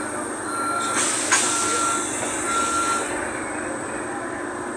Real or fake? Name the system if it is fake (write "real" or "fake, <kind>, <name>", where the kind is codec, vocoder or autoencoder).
fake, vocoder, BigVGAN v2